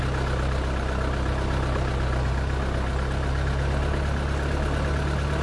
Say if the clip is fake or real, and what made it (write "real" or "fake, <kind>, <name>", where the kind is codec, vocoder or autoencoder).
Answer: real